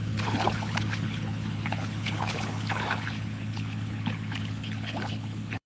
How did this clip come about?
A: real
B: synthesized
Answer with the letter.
B